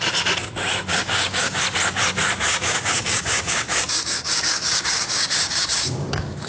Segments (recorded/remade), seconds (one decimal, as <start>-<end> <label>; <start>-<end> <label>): 0.0-0.9 recorded; 0.9-1.6 remade; 1.6-2.5 recorded; 2.5-6.5 remade